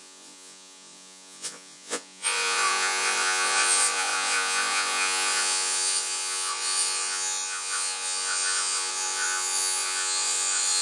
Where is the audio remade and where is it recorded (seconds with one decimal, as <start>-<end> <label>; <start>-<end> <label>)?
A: 0.0-10.8 remade